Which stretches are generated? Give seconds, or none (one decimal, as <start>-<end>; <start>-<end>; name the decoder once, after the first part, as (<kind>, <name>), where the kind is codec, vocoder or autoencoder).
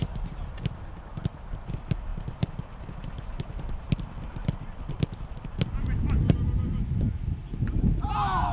none